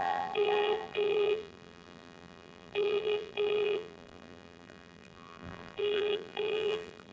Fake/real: fake